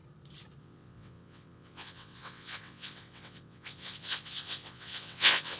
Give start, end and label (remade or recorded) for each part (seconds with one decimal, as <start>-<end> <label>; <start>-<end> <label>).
0.0-0.6 recorded; 0.6-5.6 remade